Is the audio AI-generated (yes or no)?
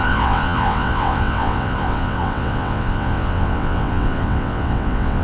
yes